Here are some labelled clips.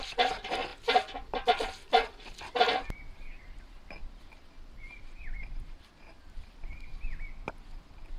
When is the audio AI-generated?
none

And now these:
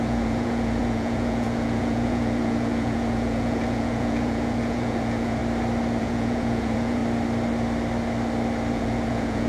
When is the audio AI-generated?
0.0-5.4 (vocoder, Vocos); 6.0-7.0; 8.7-9.5